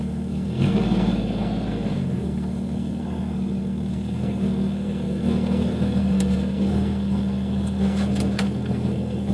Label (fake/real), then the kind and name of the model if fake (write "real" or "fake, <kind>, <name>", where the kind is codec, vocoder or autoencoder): fake, codec, SNAC